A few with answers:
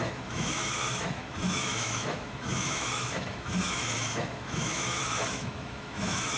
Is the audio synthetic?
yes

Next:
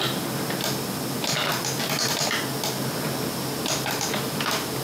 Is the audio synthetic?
no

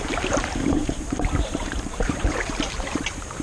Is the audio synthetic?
yes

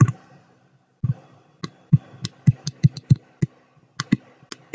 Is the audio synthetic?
no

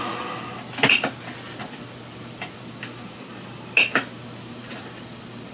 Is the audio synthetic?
no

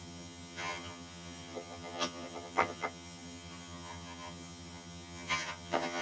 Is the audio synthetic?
yes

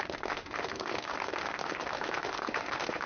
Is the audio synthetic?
yes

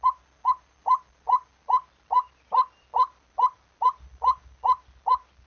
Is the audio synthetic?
no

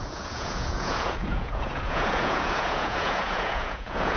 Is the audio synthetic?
yes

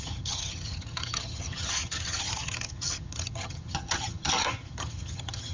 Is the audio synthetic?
yes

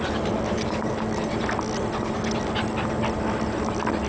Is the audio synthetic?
no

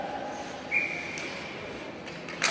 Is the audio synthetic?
no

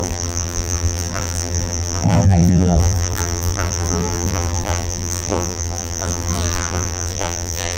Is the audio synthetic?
yes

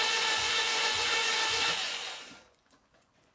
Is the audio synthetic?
yes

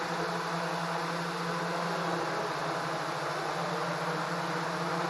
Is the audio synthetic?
no